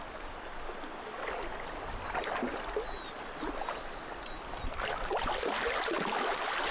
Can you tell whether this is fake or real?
real